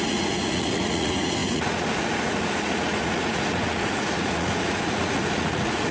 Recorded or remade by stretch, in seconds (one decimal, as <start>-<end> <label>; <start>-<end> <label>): 0.0-5.9 remade